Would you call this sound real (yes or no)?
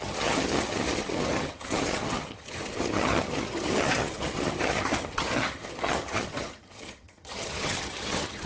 no